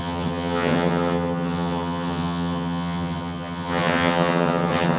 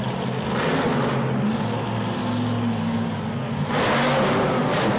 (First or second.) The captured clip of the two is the second